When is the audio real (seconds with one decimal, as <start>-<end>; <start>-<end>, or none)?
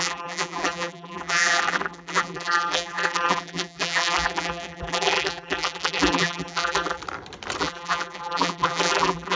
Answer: 7.0-7.6